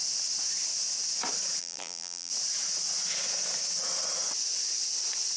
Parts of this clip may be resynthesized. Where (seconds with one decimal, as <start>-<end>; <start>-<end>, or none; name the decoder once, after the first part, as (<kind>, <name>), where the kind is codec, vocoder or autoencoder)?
1.6-2.3 (vocoder, BigVGAN v2)